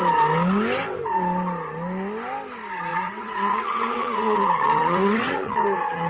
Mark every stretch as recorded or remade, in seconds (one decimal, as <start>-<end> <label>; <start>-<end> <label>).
0.0-2.9 recorded; 2.9-6.1 remade